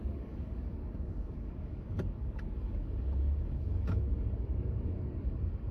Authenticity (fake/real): fake